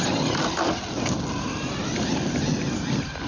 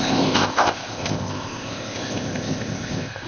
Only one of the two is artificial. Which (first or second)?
second